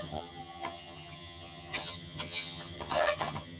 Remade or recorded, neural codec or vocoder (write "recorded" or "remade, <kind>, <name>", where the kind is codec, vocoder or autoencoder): remade, vocoder, HiFi-GAN